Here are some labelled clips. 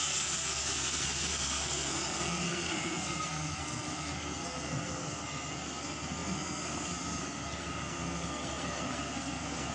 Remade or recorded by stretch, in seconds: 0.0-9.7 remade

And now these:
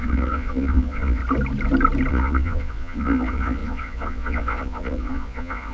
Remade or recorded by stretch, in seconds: 0.0-1.2 remade; 1.2-2.1 recorded; 2.1-5.7 remade

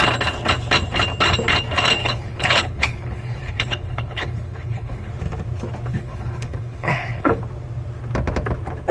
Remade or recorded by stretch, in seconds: 0.0-2.0 recorded; 2.0-5.1 remade; 5.1-5.9 recorded; 5.9-7.4 remade; 7.4-8.9 recorded